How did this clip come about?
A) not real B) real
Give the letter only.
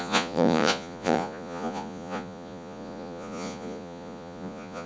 A